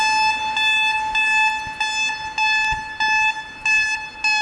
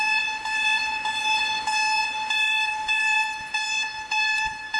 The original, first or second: first